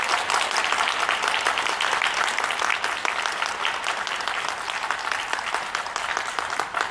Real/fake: real